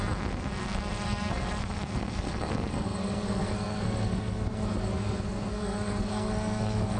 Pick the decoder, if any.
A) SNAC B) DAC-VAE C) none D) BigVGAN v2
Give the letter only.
A